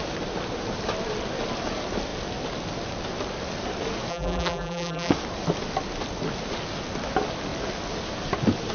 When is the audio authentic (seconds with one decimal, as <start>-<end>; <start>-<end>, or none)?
0.0-4.1; 5.1-8.7